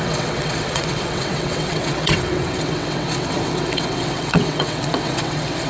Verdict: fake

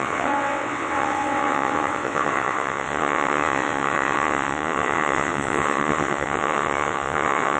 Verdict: fake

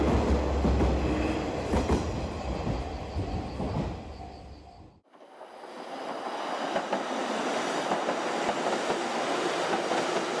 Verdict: real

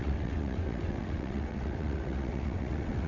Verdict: fake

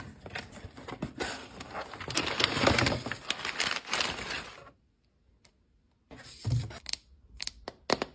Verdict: real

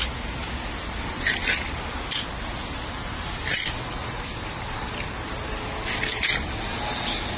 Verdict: real